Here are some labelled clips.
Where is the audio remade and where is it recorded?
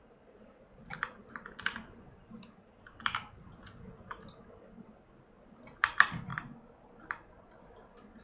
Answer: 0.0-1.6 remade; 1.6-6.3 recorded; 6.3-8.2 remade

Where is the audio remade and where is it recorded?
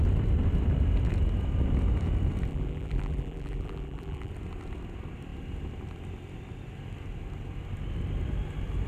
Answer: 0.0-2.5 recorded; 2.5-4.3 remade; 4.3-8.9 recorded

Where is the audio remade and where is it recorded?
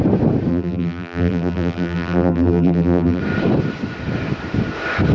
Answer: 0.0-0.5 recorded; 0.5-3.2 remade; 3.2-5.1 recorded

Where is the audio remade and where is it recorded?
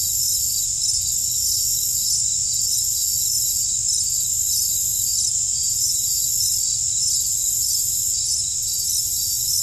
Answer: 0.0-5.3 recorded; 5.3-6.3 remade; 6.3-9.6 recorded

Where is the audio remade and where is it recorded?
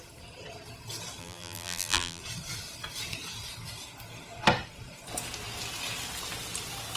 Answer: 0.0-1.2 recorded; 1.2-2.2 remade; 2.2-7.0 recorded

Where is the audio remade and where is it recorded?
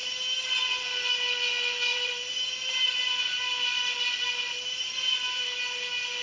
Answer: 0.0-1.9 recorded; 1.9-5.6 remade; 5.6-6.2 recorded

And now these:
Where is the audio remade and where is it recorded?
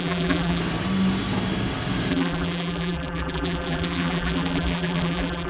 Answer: 0.0-0.6 remade; 0.6-2.1 recorded; 2.1-5.5 remade